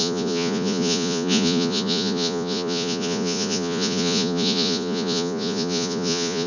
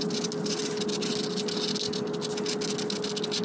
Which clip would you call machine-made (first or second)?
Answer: first